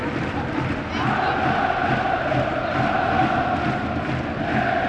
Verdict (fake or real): real